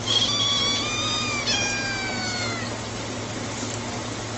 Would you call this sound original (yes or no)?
yes